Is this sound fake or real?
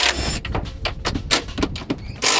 real